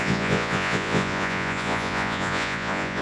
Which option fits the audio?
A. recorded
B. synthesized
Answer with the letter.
B